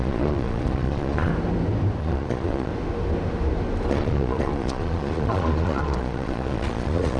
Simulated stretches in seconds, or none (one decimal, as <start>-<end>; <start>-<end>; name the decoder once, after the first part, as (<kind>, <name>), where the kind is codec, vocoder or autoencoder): 0.0-1.3 (vocoder, Vocos); 2.0-2.7; 3.9-7.2